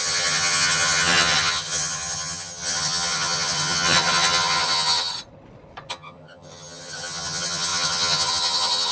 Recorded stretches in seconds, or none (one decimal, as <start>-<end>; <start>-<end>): 5.1-5.9